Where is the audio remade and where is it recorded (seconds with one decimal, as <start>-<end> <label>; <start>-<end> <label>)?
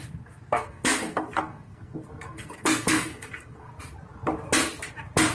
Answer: 0.0-0.5 recorded; 0.5-3.7 remade; 3.7-5.3 recorded